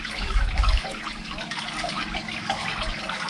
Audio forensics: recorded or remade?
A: remade